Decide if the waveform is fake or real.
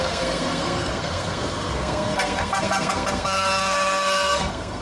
fake